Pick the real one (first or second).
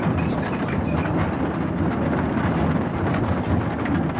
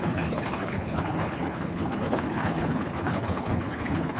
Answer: first